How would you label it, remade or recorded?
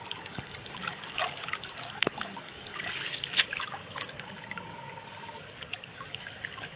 remade